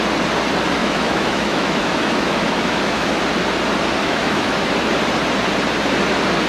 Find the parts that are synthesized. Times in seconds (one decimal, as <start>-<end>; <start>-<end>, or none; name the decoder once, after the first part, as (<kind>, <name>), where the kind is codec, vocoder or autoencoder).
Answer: 0.8-3.2 (autoencoder, DAC-VAE); 4.0-4.7